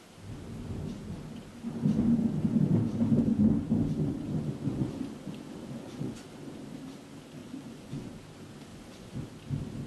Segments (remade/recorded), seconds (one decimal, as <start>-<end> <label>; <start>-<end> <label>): 0.0-4.7 recorded; 4.7-6.2 remade; 6.2-7.4 recorded; 7.4-8.1 remade; 8.1-8.7 recorded; 8.7-9.2 remade; 9.2-9.9 recorded